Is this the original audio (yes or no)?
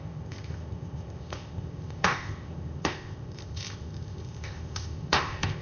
no